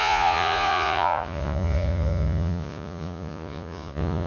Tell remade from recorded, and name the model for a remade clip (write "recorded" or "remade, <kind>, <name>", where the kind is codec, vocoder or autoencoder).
remade, vocoder, Vocos